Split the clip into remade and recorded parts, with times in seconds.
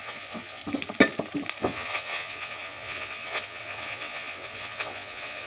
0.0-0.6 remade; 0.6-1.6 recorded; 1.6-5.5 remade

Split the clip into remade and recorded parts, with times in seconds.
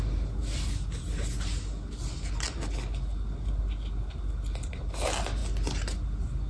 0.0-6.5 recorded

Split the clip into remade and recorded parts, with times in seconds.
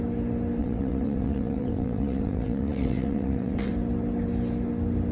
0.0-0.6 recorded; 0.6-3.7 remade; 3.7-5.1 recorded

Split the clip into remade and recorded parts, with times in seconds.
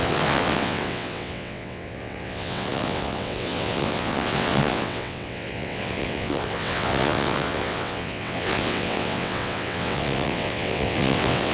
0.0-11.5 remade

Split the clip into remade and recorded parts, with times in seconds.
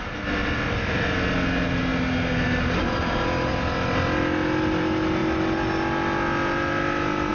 0.0-7.3 recorded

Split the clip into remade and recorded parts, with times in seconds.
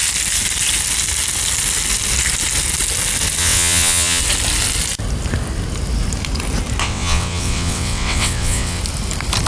0.0-3.4 recorded; 3.4-4.2 remade; 4.2-6.8 recorded; 6.8-8.8 remade; 8.8-9.5 recorded